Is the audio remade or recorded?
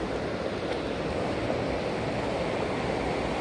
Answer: recorded